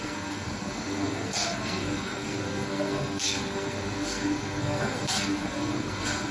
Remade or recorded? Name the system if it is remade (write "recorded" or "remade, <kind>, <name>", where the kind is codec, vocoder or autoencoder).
remade, codec, SNAC